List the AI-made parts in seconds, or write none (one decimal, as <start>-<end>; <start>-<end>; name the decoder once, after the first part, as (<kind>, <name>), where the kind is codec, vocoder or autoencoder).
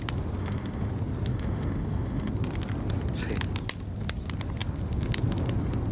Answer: 0.4-0.9 (autoencoder, DAC-VAE); 1.3-2.3